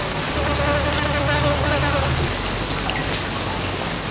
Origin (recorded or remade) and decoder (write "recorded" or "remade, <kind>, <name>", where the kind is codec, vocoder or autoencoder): recorded